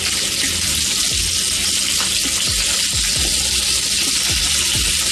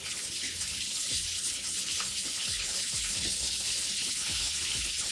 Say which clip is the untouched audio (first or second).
first